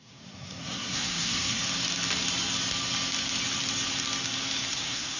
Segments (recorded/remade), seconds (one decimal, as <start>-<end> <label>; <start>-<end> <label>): 0.0-1.6 remade; 1.6-4.7 recorded; 4.7-5.2 remade